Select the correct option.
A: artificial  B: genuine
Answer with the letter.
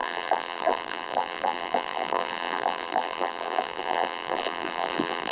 A